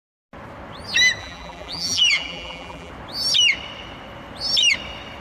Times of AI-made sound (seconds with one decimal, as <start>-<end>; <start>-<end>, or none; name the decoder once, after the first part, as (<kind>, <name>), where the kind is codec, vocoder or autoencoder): 1.2-2.9 (vocoder, BigVGAN v2)